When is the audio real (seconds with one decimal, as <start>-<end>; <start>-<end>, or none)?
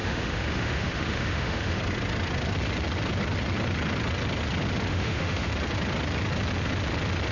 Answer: 1.8-4.9; 5.5-7.3